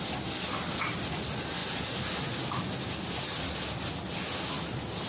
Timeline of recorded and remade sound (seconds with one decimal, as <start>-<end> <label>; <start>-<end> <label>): 0.0-5.1 recorded